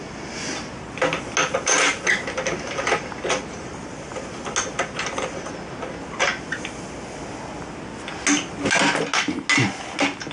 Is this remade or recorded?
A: recorded